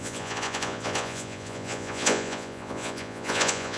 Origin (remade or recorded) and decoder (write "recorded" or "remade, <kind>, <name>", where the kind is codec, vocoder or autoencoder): remade, vocoder, Vocos